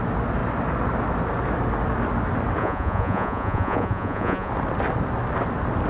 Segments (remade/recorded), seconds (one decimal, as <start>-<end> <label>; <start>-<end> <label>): 0.0-2.6 recorded; 2.6-4.5 remade; 4.5-5.9 recorded